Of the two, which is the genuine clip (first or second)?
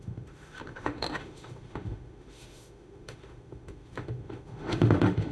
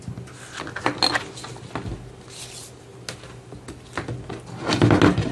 second